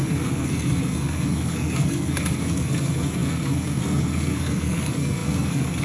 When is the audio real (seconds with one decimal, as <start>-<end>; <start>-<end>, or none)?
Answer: none